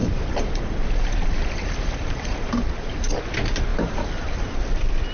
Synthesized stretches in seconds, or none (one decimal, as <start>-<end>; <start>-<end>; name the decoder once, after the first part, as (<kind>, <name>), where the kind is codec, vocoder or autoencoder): 0.0-3.1 (vocoder, BigVGAN v2); 3.7-4.5